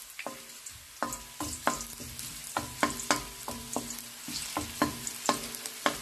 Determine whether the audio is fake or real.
real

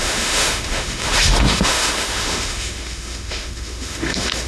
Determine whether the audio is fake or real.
fake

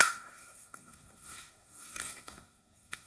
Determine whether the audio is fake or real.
fake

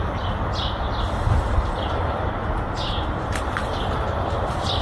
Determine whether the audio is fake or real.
real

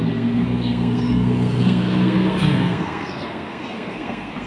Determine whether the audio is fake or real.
fake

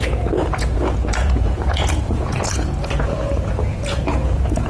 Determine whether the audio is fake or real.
fake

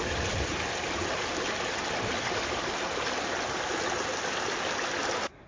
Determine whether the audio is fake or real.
real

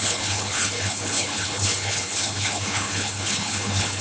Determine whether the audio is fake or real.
fake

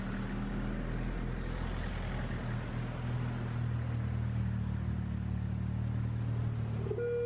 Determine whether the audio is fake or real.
real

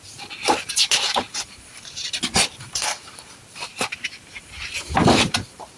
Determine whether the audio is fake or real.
fake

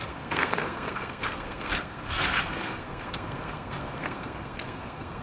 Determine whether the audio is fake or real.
fake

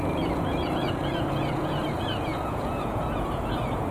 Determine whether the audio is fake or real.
fake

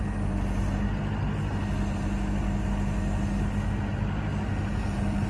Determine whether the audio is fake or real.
real